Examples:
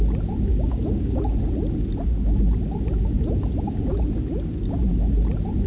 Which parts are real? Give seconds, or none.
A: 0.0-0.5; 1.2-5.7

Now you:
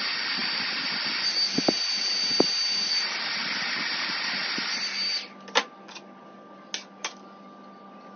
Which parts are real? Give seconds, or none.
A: 0.0-3.4; 4.1-8.2